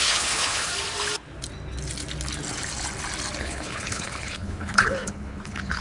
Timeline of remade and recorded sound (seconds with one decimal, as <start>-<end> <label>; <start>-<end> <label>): 0.0-0.7 remade; 0.7-3.4 recorded; 3.4-5.8 remade